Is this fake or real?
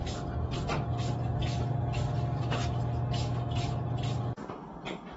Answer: real